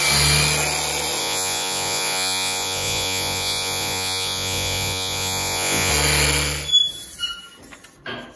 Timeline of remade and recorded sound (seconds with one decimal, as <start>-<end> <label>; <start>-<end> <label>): 0.0-1.2 recorded; 1.2-5.9 remade; 5.9-8.4 recorded